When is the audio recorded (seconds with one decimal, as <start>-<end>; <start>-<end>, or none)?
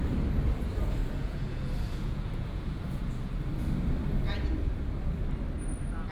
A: 0.0-1.0; 3.4-6.1